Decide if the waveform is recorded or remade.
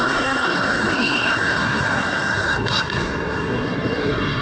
remade